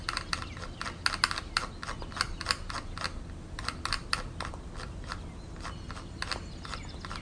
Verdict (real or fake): real